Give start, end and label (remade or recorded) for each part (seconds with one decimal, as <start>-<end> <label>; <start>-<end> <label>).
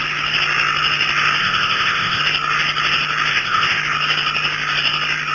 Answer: 0.0-1.4 recorded; 1.4-2.2 remade; 2.2-3.3 recorded; 3.3-3.8 remade; 3.8-5.3 recorded